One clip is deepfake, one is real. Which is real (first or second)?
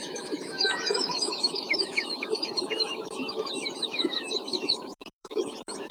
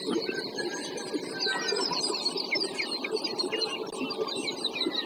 second